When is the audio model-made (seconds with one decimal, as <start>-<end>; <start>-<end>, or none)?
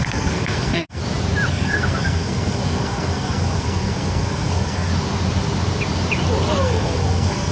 0.0-1.0; 1.5-4.9; 6.6-7.5